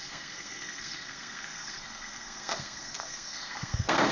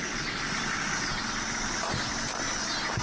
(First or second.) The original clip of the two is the second